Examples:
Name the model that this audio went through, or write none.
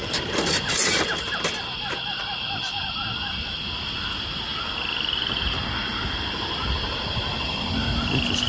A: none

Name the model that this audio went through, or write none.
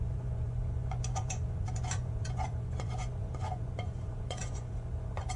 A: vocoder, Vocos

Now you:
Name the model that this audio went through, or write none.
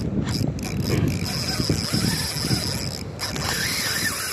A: none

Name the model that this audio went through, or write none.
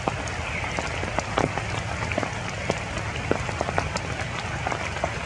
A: none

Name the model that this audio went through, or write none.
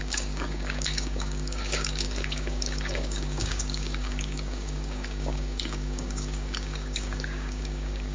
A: codec, DAC